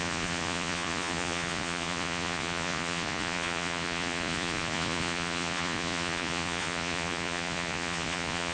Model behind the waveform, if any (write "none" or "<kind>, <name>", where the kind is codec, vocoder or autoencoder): vocoder, Vocos